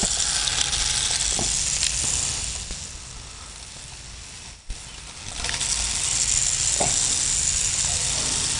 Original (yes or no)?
yes